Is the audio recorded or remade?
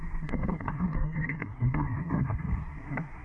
remade